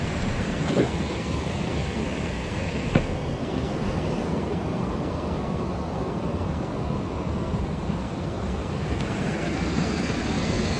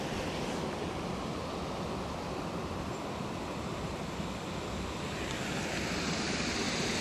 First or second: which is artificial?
first